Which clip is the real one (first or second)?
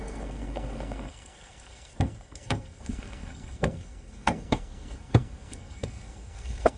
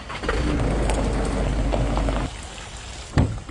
second